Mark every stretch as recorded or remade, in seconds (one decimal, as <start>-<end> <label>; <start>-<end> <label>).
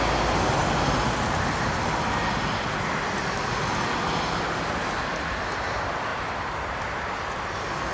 0.0-7.9 recorded